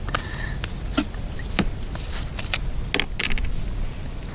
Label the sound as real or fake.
real